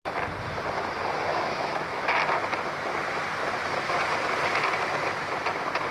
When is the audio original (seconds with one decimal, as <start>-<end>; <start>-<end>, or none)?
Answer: 0.0-1.3; 2.1-5.9